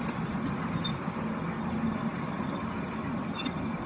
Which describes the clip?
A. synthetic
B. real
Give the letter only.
B